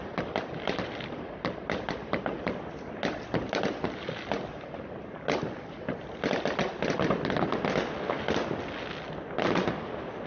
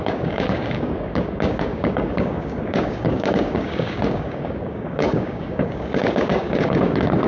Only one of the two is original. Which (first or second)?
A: first